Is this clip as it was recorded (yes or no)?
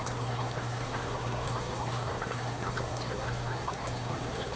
no